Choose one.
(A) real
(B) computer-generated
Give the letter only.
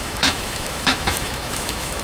B